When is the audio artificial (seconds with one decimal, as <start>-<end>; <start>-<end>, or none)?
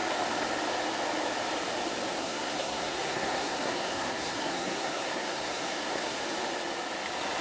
2.2-6.2